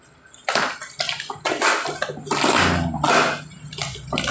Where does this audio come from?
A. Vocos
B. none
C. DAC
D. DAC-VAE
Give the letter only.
B